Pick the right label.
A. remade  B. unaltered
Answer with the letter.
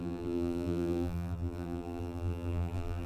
A